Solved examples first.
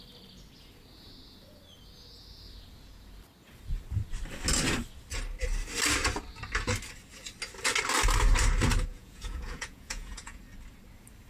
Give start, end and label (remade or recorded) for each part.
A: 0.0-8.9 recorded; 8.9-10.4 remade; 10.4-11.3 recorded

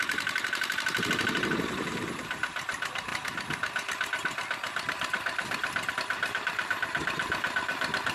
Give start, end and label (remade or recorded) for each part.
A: 0.0-8.1 remade

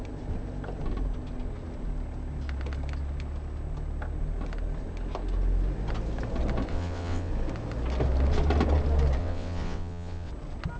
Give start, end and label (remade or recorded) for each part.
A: 0.0-6.7 recorded; 6.7-7.3 remade; 7.3-9.2 recorded; 9.2-10.3 remade; 10.3-10.8 recorded